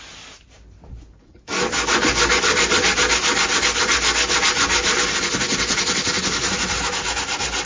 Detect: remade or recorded recorded